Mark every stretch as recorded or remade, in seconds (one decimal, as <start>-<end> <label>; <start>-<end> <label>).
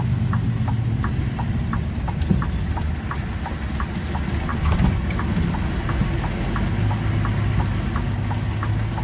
0.0-9.0 recorded